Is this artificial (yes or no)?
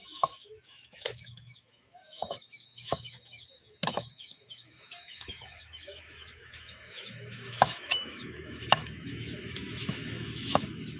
yes